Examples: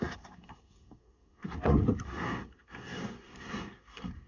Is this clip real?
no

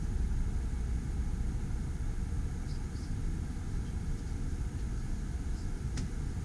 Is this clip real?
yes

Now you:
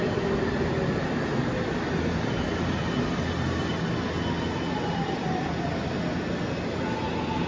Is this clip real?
yes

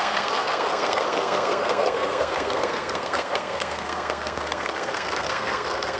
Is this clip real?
no